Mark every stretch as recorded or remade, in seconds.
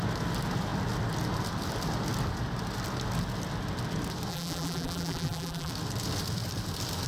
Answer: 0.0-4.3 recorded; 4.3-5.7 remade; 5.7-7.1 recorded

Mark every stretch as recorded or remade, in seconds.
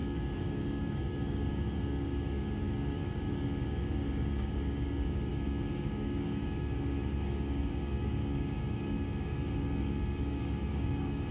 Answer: 0.0-11.3 remade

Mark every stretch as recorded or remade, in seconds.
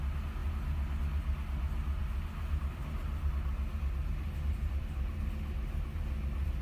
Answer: 0.0-2.0 recorded; 2.0-3.3 remade; 3.3-4.0 recorded; 4.0-4.9 remade; 4.9-6.6 recorded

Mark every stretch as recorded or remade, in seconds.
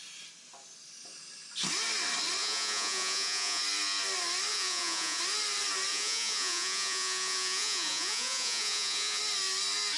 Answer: 0.0-2.4 recorded; 2.4-3.6 remade; 3.6-4.5 recorded; 4.5-5.2 remade; 5.2-5.9 recorded; 5.9-9.2 remade; 9.2-10.0 recorded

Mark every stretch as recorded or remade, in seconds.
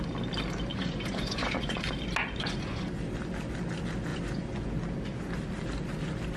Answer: 0.0-0.7 recorded; 0.7-1.8 remade; 1.8-2.2 recorded; 2.2-3.0 remade; 3.0-4.1 recorded; 4.1-4.7 remade; 4.7-6.4 recorded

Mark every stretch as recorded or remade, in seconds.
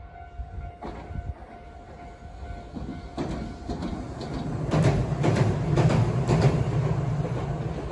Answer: 0.0-7.9 recorded